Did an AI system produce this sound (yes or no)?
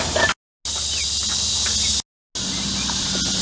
no